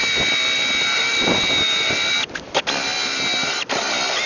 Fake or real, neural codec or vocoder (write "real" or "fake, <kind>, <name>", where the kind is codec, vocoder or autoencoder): real